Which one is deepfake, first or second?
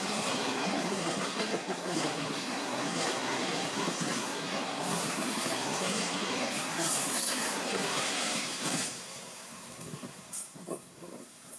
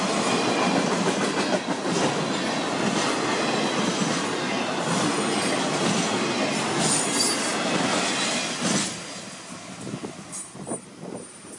first